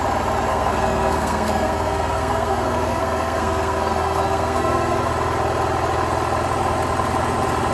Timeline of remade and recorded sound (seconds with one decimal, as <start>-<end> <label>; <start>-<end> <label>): 0.0-0.5 recorded; 0.5-5.1 remade; 5.1-7.7 recorded